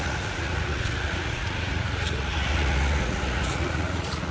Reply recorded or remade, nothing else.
remade